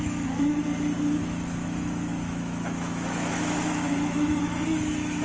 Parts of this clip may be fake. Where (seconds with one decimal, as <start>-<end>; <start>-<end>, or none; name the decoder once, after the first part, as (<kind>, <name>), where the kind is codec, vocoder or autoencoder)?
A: 0.0-0.6 (autoencoder, DAC-VAE); 1.2-5.2